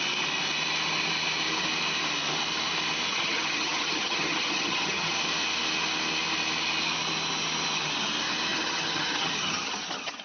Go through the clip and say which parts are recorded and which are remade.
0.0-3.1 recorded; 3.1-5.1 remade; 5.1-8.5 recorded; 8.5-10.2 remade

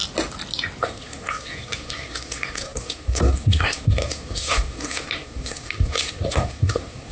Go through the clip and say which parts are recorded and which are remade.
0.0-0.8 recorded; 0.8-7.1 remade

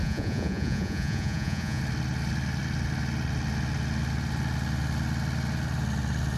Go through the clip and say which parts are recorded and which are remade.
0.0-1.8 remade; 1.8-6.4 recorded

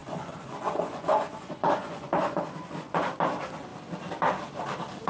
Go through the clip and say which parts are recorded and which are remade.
0.0-3.1 remade; 3.1-5.1 recorded

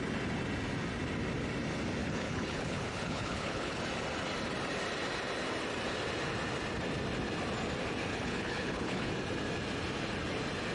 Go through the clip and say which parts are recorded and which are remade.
0.0-2.0 recorded; 2.0-3.8 remade; 3.8-8.1 recorded; 8.1-9.1 remade; 9.1-10.7 recorded

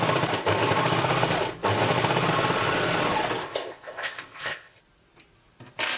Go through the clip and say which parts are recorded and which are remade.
0.0-3.4 recorded; 3.4-4.8 remade; 4.8-6.0 recorded